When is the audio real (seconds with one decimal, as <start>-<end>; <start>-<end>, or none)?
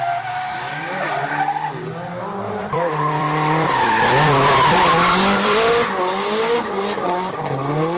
0.0-2.6; 5.9-8.0